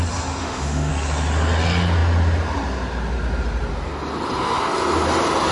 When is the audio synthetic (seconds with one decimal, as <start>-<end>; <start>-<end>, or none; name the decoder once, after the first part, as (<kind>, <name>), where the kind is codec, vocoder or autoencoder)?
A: 0.4-0.9 (autoencoder, DAC-VAE)